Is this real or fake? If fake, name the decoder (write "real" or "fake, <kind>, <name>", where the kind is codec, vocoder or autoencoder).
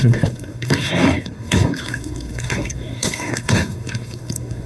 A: fake, codec, SNAC